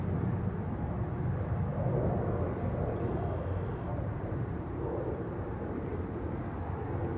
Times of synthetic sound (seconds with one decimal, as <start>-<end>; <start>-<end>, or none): 3.9-4.6; 5.9-6.4